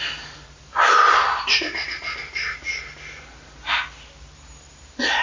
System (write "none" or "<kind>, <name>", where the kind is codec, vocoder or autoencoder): none